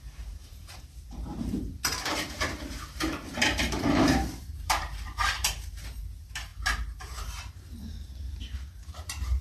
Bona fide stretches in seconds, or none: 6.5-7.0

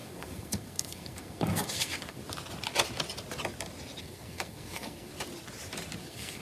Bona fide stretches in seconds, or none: 2.2-4.0; 5.1-6.0